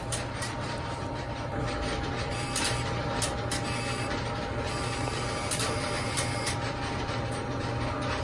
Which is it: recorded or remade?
remade